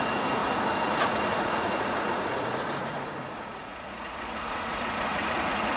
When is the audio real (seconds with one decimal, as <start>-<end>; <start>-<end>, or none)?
none